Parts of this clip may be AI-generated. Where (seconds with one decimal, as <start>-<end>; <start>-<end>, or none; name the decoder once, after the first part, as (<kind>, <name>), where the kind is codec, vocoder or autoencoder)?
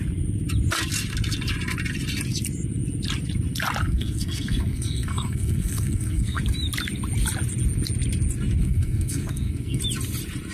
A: 3.8-6.4 (codec, SNAC); 8.6-9.8